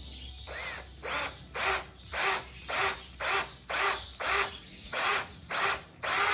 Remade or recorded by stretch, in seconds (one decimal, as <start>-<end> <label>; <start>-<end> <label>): 0.0-4.8 recorded; 4.8-5.5 remade; 5.5-6.3 recorded